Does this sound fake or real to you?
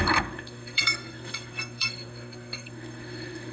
fake